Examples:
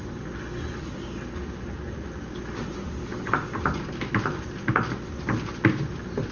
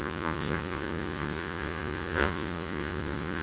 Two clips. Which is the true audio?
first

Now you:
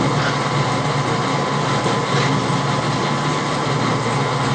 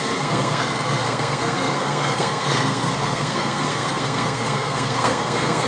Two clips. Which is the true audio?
first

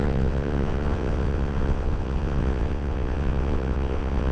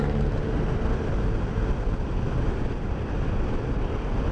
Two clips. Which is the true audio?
second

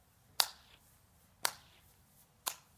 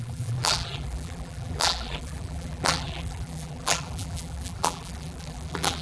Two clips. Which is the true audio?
first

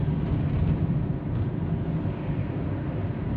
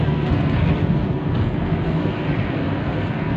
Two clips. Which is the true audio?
first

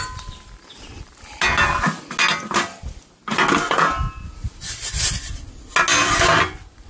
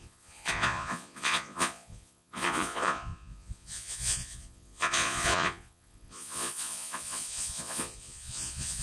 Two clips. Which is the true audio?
first